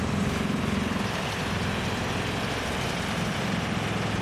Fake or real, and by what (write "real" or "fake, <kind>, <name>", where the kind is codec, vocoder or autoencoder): real